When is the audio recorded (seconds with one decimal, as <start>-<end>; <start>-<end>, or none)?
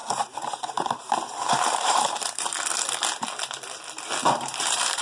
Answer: 0.0-1.0; 2.5-4.2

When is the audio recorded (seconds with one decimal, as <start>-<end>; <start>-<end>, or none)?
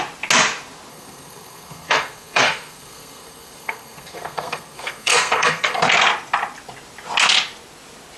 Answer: 0.0-0.9; 5.8-8.2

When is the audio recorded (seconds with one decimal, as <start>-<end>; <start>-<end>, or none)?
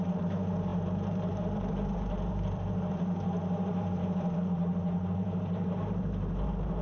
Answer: none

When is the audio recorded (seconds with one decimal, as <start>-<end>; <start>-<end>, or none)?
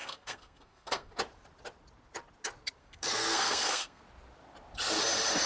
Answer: 1.1-2.8; 4.0-5.5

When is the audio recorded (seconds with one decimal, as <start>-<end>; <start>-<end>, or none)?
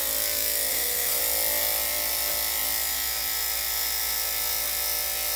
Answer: 0.0-0.7; 1.2-5.4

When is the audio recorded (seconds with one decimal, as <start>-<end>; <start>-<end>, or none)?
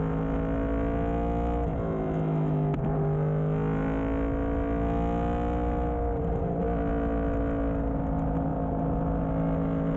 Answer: 0.0-10.0